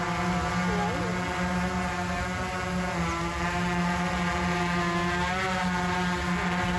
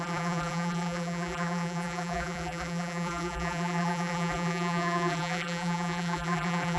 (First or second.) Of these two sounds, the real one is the first